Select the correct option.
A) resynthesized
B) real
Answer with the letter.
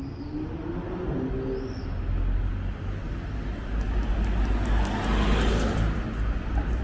B